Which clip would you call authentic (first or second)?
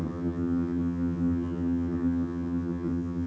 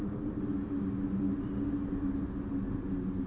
second